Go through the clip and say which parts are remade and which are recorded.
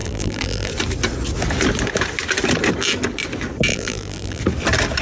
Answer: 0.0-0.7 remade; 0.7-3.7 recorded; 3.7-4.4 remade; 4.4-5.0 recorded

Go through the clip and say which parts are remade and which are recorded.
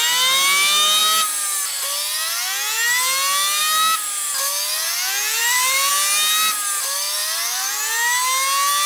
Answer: 0.0-5.4 recorded; 5.4-5.9 remade; 5.9-7.2 recorded; 7.2-7.7 remade; 7.7-8.9 recorded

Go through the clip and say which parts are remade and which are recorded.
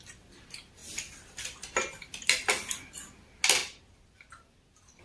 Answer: 0.0-5.0 recorded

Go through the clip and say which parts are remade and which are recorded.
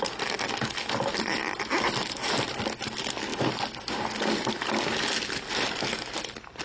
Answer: 0.0-6.6 recorded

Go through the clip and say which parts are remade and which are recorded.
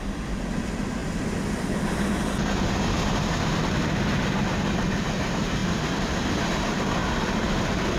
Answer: 0.0-8.0 recorded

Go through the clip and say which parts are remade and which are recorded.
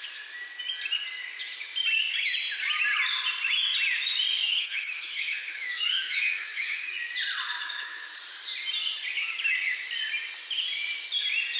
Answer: 0.0-4.4 recorded; 4.4-7.1 remade; 7.1-7.6 recorded; 7.6-8.2 remade; 8.2-11.6 recorded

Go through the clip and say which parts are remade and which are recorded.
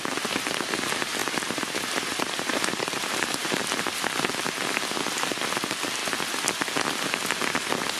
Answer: 0.0-1.2 recorded; 1.2-4.1 remade; 4.1-8.0 recorded